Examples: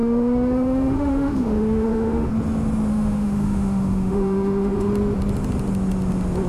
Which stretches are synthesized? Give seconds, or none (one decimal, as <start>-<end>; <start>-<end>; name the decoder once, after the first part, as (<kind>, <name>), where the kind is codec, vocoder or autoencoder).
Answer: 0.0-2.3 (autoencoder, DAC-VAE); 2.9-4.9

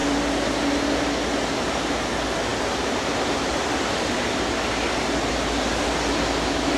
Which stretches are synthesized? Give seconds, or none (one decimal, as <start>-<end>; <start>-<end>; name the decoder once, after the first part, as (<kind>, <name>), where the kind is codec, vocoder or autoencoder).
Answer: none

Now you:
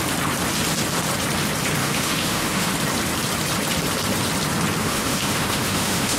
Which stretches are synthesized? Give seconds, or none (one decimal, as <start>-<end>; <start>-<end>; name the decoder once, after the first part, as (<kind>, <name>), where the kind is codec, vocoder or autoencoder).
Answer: 1.8-2.7 (autoencoder, DAC-VAE); 4.8-6.2

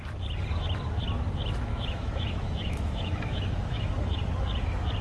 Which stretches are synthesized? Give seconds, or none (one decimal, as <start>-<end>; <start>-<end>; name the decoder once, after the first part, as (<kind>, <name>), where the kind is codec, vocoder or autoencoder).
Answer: 1.7-4.2 (autoencoder, DAC-VAE)

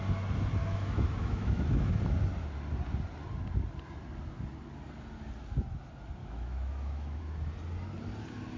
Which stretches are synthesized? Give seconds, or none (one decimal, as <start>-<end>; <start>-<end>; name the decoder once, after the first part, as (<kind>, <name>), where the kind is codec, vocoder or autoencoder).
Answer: 0.6-1.9 (autoencoder, DAC-VAE); 6.2-7.2

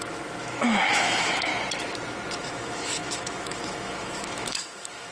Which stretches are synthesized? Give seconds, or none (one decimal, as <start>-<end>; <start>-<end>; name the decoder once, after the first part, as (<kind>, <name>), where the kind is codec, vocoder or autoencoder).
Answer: 0.0-1.5 (autoencoder, DAC-VAE); 2.4-5.1

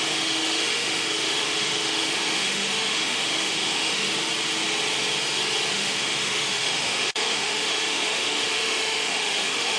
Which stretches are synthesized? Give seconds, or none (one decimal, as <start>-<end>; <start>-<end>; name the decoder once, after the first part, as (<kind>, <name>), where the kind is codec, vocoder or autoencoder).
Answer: 0.0-4.3 (autoencoder, DAC-VAE); 5.7-9.8

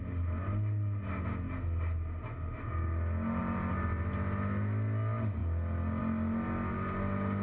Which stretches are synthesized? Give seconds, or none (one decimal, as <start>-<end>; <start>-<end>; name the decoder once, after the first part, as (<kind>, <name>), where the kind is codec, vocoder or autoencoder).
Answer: none